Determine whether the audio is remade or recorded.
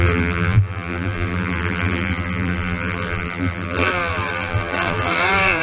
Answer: remade